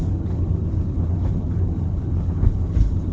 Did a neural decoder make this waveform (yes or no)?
yes